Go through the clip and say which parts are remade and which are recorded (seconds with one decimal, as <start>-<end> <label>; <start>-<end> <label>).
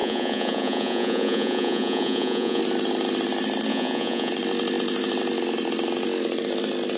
0.0-2.6 remade; 2.6-3.7 recorded; 3.7-4.3 remade; 4.3-7.0 recorded